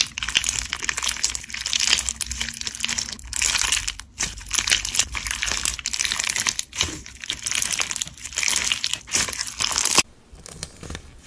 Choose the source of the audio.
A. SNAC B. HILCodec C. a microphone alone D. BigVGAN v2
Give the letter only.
C